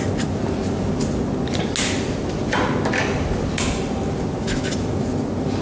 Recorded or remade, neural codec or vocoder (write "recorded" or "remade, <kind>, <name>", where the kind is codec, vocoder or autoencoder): recorded